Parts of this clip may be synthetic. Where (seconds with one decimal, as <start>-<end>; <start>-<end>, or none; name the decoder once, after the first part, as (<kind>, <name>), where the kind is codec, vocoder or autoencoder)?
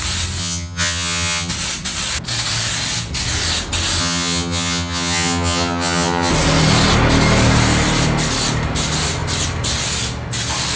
0.4-1.5 (vocoder, HiFi-GAN); 4.0-6.3